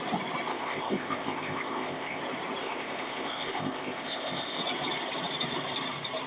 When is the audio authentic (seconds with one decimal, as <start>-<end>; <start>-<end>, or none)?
0.0-0.5; 2.2-2.6; 4.6-6.3